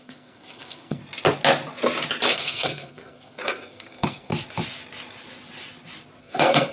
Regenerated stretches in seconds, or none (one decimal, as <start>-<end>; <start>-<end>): 0.0-1.0; 2.3-4.3; 6.2-6.7